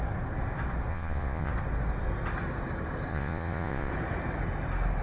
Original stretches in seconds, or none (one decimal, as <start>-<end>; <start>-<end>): 0.0-0.9; 1.5-3.1; 3.9-5.0